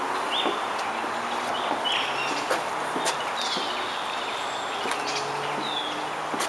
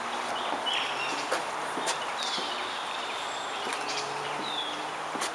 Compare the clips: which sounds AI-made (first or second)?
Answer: second